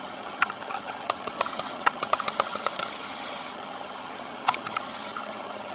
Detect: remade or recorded remade